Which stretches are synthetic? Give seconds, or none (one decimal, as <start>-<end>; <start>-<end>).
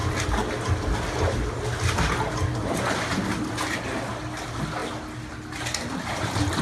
none